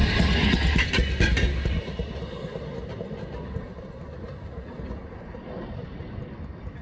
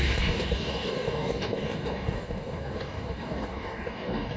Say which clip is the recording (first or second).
first